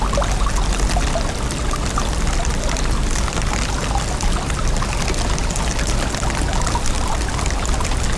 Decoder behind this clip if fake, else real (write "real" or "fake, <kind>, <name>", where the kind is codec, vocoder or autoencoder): real